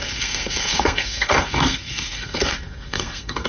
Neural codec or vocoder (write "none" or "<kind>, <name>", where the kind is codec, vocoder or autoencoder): codec, SNAC